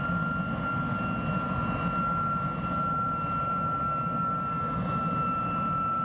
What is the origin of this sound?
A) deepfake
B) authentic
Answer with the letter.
B